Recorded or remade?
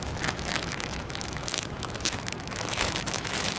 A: remade